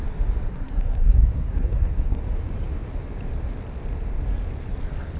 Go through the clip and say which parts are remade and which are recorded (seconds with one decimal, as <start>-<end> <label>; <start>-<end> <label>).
0.0-0.5 recorded; 0.5-2.2 remade; 2.2-5.2 recorded